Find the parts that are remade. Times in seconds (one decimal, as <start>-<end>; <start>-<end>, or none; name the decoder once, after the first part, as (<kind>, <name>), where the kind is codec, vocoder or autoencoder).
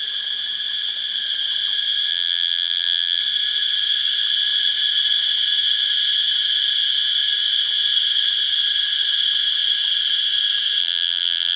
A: 2.1-3.2 (vocoder, BigVGAN v2); 10.8-11.6